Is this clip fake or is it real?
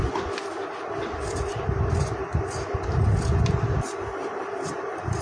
real